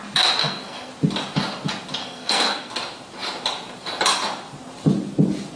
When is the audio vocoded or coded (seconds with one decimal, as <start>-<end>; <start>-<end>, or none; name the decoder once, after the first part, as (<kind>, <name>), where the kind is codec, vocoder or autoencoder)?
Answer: 0.4-0.9 (codec, SNAC); 2.0-2.7

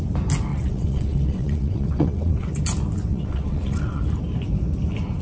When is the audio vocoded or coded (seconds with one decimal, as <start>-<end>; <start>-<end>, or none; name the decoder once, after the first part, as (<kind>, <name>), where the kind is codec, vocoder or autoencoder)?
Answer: 0.5-2.5 (vocoder, WaveNeXt); 3.1-4.0

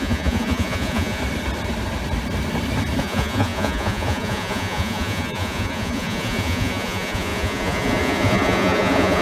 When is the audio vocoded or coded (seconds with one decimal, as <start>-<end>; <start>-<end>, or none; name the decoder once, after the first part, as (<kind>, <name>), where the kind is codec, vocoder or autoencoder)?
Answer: 0.0-1.2 (vocoder, Vocos); 3.0-9.2

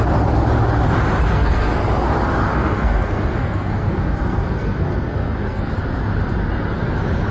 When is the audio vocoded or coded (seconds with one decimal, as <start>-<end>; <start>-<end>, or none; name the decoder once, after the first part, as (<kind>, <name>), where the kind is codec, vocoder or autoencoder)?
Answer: 1.3-1.8 (codec, SNAC); 2.5-5.7

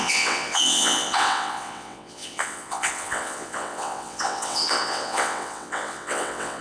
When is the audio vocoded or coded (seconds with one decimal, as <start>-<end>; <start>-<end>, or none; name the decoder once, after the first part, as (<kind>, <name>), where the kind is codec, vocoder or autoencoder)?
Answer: 0.0-6.6 (vocoder, WaveNeXt)

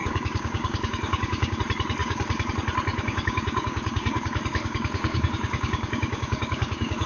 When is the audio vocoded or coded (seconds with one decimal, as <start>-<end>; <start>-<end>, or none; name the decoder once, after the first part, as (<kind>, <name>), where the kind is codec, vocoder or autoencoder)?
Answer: 0.0-1.6 (codec, DAC); 2.0-2.5; 2.9-7.1

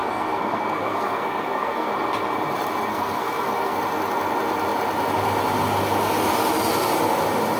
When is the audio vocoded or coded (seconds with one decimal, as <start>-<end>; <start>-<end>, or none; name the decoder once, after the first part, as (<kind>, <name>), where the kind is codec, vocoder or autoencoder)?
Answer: 0.0-1.9 (codec, SNAC); 2.9-3.8

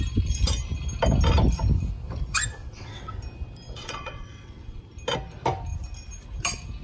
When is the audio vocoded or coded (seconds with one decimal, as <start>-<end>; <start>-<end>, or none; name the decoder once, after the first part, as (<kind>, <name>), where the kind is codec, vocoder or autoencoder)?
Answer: 2.6-3.1 (vocoder, WaveNeXt); 3.8-4.8